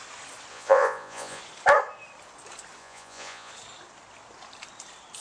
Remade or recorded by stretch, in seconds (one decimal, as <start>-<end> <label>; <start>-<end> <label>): 0.0-0.5 recorded; 0.5-1.4 remade; 1.4-2.8 recorded; 2.8-3.5 remade; 3.5-5.2 recorded